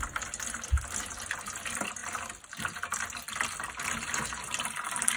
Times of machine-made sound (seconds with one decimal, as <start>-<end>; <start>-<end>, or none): none